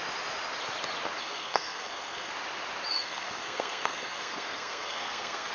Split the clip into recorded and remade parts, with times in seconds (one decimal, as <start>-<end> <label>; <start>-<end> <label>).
0.0-1.2 recorded; 1.2-2.3 remade; 2.3-2.9 recorded; 2.9-5.5 remade